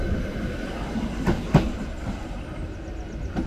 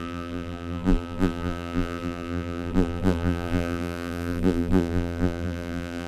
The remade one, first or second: second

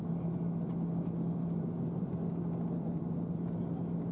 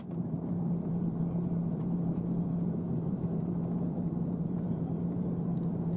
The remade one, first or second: second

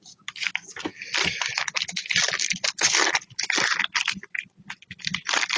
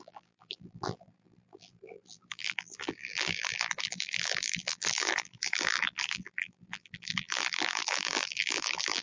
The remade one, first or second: second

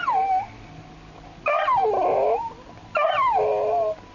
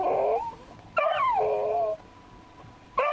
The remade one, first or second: second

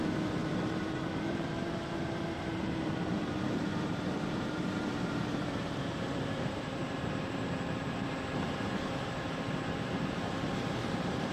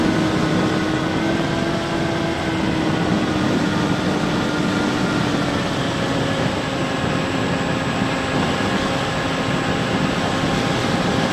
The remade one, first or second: first